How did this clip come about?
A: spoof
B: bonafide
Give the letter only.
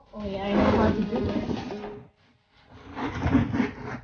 B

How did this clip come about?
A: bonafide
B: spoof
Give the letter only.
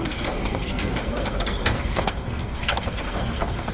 B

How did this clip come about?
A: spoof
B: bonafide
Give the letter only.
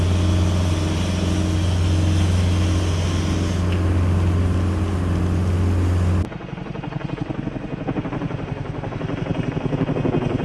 B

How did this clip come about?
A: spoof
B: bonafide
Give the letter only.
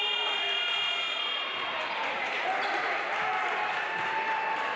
B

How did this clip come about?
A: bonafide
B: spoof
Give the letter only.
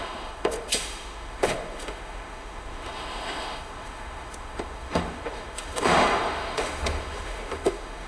B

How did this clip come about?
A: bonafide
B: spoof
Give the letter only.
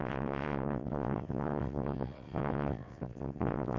B